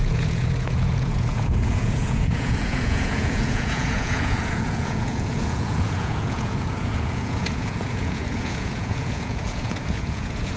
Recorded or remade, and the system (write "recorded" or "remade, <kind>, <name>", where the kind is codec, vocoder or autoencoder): remade, vocoder, Vocos